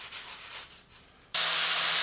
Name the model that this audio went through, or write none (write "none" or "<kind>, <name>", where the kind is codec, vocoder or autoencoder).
vocoder, BigVGAN v2